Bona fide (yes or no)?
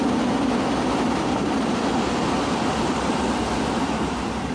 yes